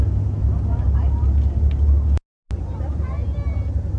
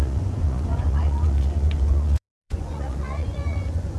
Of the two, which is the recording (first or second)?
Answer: first